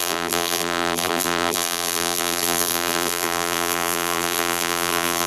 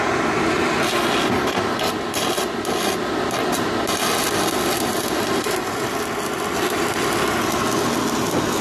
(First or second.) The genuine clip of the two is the second